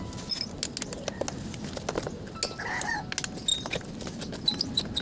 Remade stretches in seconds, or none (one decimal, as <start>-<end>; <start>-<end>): none